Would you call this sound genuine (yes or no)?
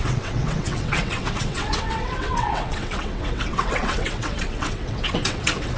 no